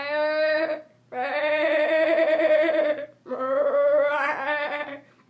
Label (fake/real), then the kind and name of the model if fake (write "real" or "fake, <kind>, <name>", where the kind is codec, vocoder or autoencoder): real